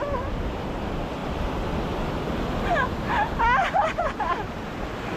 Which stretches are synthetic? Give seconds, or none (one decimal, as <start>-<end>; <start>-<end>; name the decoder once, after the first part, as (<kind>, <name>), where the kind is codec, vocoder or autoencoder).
1.2-2.2 (vocoder, BigVGAN v2); 3.6-4.7